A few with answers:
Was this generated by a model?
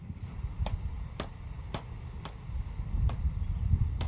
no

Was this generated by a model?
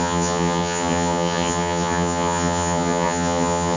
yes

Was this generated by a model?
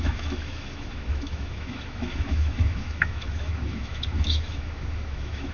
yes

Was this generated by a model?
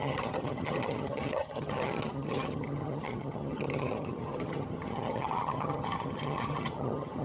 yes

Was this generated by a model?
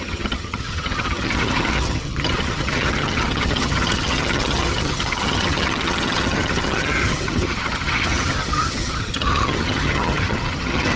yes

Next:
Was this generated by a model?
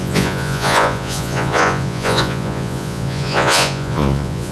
yes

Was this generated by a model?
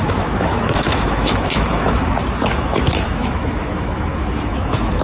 yes